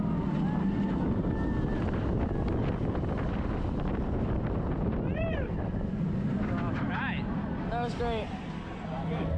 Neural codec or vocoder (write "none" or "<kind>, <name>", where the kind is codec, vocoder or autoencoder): none